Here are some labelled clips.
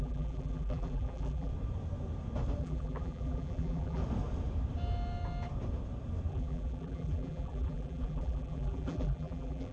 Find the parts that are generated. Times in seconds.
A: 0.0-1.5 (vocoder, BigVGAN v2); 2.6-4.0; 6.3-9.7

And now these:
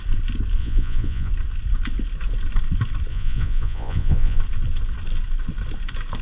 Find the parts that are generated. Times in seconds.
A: 0.6-1.3 (vocoder, Vocos); 3.1-4.4

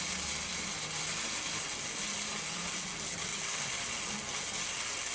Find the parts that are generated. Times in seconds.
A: none